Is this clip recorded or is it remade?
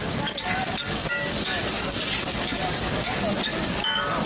remade